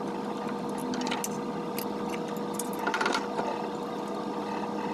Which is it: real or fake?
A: real